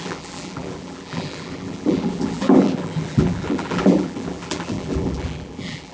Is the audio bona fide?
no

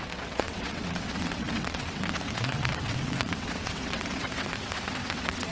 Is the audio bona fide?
no